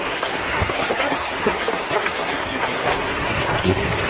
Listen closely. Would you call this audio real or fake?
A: fake